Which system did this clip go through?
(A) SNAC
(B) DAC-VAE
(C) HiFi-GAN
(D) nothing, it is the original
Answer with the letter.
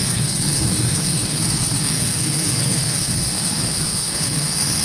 A